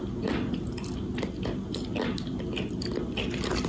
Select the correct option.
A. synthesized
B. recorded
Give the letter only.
B